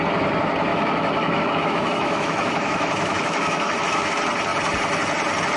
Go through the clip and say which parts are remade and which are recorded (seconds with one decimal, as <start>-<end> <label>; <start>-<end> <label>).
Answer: 0.0-0.7 recorded; 0.7-4.1 remade; 4.1-5.6 recorded